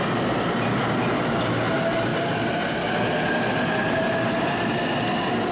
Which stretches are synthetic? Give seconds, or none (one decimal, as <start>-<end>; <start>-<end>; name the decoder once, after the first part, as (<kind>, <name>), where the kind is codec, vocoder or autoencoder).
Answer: none